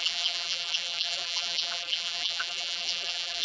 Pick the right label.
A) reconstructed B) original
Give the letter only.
A